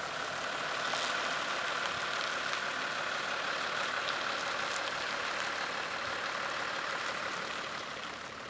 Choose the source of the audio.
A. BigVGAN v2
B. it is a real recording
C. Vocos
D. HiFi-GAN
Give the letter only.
B